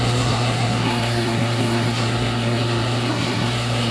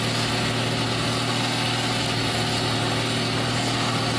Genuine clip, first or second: second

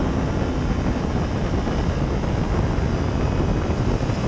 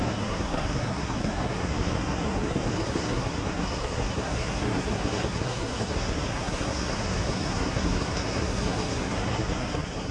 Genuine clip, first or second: first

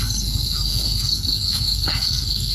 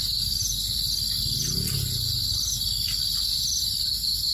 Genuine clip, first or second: second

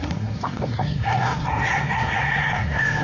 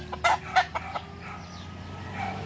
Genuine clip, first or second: second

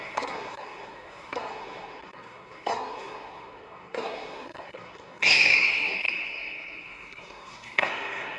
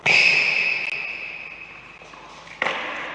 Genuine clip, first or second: second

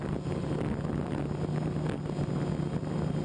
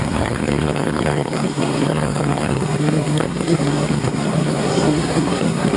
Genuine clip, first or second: first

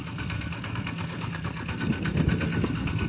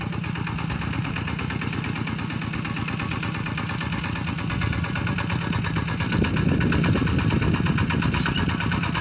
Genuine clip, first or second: second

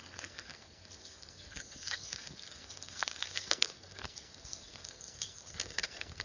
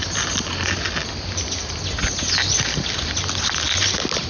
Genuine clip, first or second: second